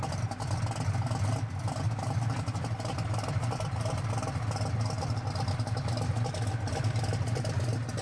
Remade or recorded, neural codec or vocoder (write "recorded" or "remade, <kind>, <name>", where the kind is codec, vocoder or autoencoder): recorded